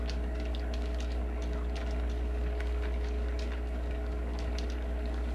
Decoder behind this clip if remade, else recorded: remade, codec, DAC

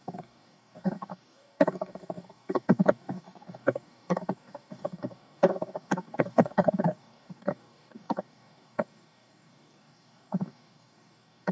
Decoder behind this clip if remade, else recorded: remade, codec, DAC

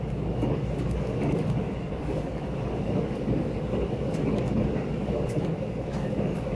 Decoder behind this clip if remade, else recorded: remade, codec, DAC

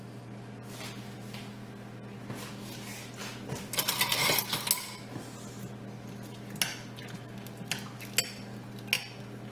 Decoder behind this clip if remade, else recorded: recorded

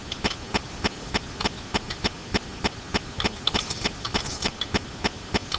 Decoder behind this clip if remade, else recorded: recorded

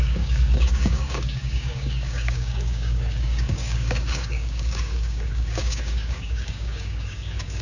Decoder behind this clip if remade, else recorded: remade, codec, DAC